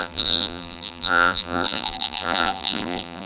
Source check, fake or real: fake